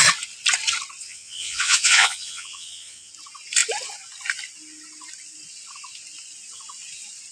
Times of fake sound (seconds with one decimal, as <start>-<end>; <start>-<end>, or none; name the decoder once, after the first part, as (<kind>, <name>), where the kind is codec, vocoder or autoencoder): 1.0-3.1 (vocoder, Vocos)